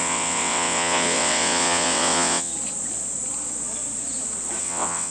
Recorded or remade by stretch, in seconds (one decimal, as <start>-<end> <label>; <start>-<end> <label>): 0.0-2.5 remade; 2.5-4.6 recorded; 4.6-5.1 remade